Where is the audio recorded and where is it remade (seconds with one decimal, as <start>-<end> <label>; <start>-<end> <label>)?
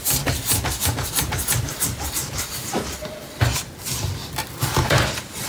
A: 0.0-5.5 recorded